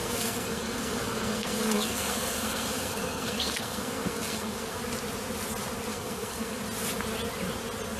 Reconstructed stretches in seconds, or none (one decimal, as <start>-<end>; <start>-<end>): 0.0-4.8; 5.9-6.6